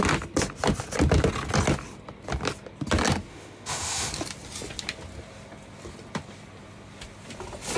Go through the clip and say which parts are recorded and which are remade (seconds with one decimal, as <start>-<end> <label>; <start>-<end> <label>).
0.0-3.3 recorded; 3.3-4.1 remade; 4.1-7.8 recorded